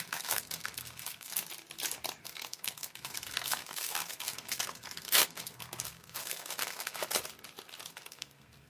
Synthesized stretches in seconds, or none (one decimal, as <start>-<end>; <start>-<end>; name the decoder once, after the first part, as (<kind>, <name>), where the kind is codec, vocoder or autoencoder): 0.0-1.4 (codec, SNAC); 2.2-7.0; 7.9-8.7